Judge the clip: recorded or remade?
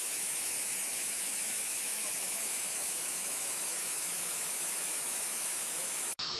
remade